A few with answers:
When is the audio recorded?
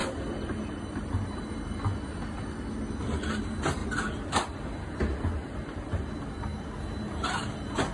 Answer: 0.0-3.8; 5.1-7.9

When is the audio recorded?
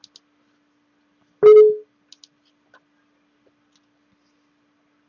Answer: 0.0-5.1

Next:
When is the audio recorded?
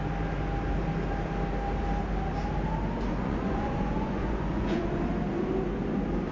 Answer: 0.0-3.1; 5.0-6.3